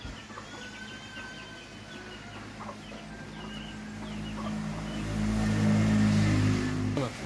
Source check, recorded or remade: recorded